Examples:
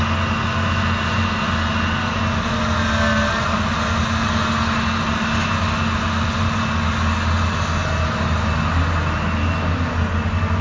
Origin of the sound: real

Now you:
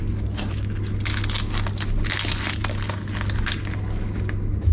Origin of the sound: real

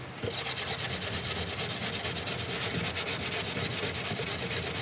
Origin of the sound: real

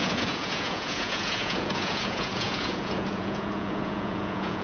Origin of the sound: fake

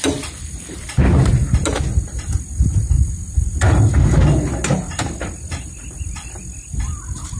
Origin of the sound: real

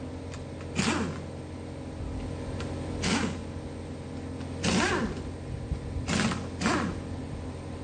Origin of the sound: real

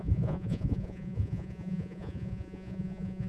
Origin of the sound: fake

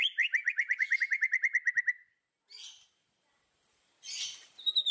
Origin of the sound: real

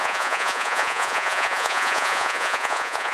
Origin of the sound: fake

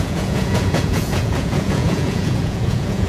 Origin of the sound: fake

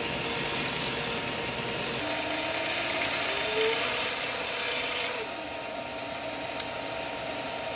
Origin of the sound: real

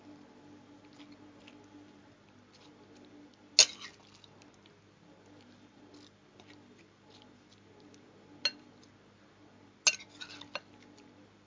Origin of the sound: real